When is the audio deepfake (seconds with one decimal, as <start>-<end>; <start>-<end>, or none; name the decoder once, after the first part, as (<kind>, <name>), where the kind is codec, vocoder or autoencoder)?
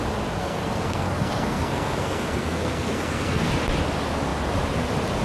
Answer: 0.4-3.5 (codec, SNAC)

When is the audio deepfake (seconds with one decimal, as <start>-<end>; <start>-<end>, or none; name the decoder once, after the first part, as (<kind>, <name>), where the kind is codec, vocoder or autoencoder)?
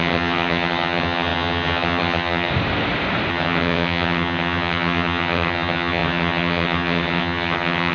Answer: 0.0-2.5 (vocoder, HiFi-GAN); 3.3-7.9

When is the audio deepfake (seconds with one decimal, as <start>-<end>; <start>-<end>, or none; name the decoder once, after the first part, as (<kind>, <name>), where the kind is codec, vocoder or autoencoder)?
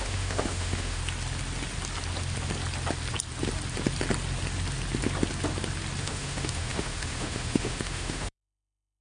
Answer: 0.0-1.0 (autoencoder, DAC-VAE); 6.0-9.0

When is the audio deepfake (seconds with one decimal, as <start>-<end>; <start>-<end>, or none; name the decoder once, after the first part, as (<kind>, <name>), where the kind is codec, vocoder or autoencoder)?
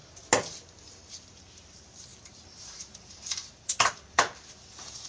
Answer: 1.4-5.1 (vocoder, BigVGAN v2)